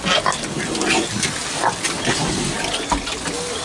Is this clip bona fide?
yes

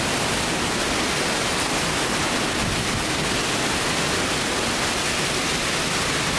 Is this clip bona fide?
yes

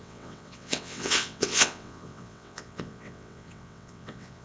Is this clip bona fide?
no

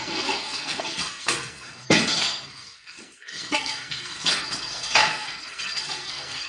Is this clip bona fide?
no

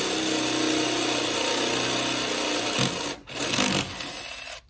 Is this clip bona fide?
yes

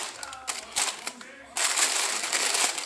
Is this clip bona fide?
yes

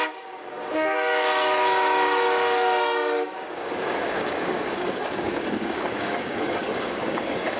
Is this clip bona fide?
no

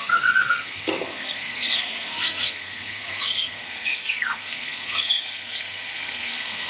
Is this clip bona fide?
no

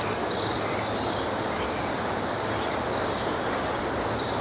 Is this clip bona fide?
yes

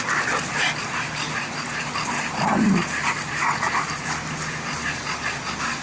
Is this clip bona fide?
yes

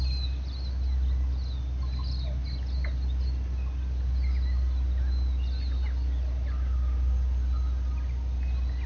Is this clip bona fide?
yes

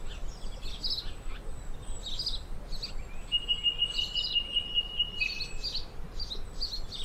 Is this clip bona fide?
yes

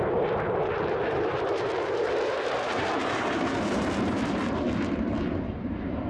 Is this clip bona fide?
no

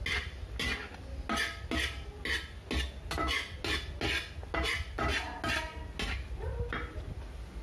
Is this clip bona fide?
yes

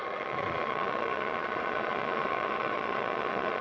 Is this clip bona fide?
no